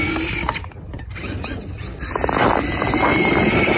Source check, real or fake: real